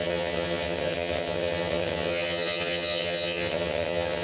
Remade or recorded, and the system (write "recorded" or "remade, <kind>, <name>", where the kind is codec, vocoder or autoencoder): remade, vocoder, HiFi-GAN